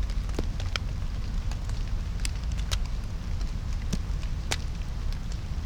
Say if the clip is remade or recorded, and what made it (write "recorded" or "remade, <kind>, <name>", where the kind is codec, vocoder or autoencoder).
recorded